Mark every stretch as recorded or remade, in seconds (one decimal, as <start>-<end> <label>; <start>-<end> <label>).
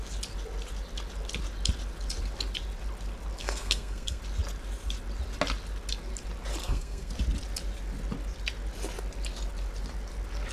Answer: 0.0-3.4 recorded; 3.4-4.2 remade; 4.2-6.6 recorded; 6.6-7.1 remade; 7.1-10.5 recorded